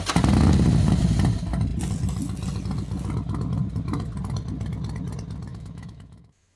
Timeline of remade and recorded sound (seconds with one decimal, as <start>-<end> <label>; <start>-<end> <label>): 0.0-5.5 recorded; 5.5-6.6 remade